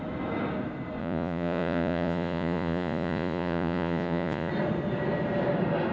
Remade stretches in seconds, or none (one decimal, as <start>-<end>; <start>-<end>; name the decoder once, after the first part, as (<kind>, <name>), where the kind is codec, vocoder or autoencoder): 1.0-4.5 (vocoder, Vocos)